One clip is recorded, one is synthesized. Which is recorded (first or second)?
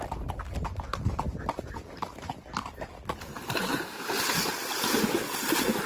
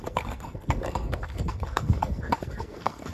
first